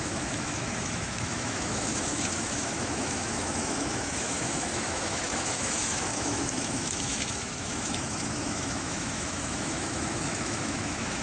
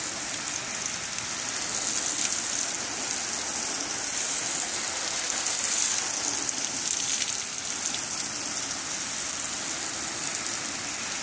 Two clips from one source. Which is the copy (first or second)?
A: first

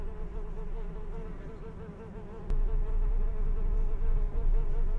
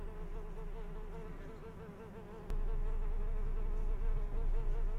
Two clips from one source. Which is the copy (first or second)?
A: first